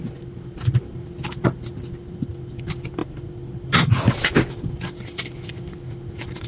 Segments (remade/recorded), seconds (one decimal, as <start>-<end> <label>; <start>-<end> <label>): 0.0-6.5 recorded